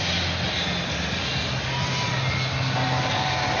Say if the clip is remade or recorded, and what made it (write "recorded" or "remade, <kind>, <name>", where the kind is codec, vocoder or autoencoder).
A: recorded